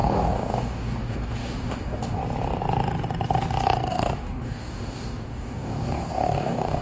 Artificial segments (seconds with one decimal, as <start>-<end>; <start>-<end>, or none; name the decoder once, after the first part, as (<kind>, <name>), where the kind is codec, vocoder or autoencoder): 0.0-2.2 (codec, DAC); 3.9-6.8

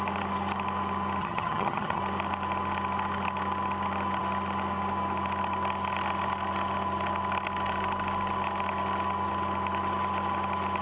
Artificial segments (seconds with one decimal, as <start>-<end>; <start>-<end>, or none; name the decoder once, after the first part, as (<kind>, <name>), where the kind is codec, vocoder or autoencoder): 1.2-2.0 (vocoder, HiFi-GAN)

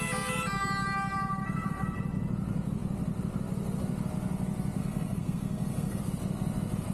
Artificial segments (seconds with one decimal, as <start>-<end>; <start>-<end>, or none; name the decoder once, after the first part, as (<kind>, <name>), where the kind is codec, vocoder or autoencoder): 4.8-6.0 (codec, SNAC)

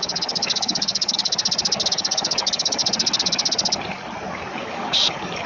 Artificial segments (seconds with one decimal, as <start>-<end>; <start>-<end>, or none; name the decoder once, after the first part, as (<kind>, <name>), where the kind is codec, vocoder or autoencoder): 0.0-1.3 (codec, DAC); 1.9-2.8; 4.5-5.5